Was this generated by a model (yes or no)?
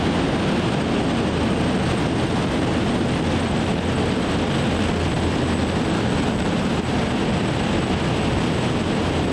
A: no